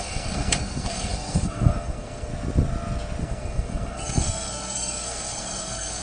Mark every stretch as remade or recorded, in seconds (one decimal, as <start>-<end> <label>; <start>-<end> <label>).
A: 0.0-2.3 remade; 2.3-3.2 recorded; 3.2-6.0 remade